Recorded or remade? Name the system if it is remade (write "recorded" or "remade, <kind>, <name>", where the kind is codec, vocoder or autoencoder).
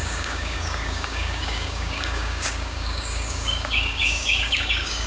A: remade, codec, DAC